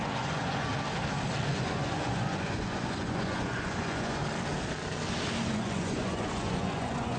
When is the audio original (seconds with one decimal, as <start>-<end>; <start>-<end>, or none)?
0.7-1.5; 4.2-5.5